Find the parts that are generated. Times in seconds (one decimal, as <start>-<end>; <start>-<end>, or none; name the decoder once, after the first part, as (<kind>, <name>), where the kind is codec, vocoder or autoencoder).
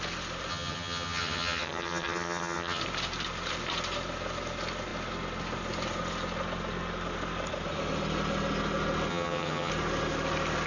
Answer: 0.5-2.8 (vocoder, HiFi-GAN); 9.1-9.7